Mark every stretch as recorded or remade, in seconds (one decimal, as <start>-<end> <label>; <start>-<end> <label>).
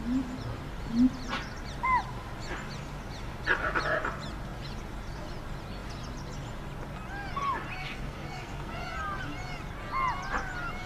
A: 0.0-7.8 recorded; 7.8-8.7 remade; 8.7-10.9 recorded